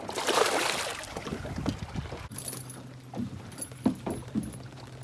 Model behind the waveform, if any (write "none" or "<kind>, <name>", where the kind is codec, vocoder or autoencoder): none